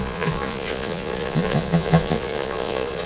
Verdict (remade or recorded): remade